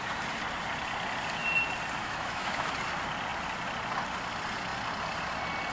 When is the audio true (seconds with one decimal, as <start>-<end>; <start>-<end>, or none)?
0.0-2.0; 2.7-5.7

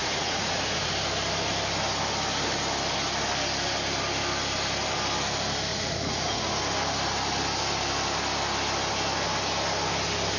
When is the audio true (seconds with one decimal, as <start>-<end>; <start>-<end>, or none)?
0.9-5.7; 6.6-10.4

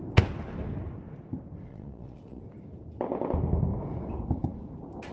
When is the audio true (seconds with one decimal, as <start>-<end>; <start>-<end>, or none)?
0.0-1.7; 2.4-5.1

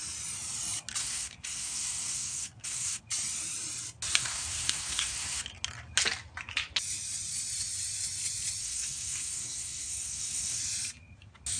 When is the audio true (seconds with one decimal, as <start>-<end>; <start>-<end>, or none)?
0.0-1.0; 3.0-4.2; 5.4-8.6; 10.6-11.6

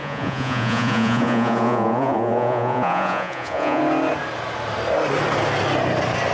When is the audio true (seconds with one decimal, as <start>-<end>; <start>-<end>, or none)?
3.8-6.3